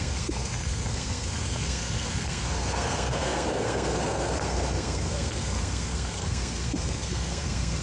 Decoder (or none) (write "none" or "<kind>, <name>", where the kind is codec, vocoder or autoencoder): codec, SNAC